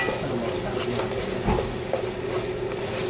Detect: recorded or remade recorded